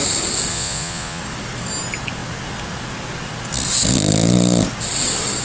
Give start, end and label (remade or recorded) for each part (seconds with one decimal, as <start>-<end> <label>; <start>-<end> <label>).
0.0-0.5 recorded; 0.5-1.2 remade; 1.2-5.4 recorded